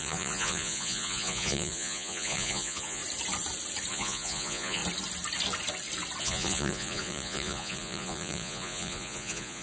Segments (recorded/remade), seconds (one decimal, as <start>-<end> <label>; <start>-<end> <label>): 0.0-3.0 remade; 3.0-3.9 recorded; 3.9-4.8 remade; 4.8-6.2 recorded; 6.2-9.6 remade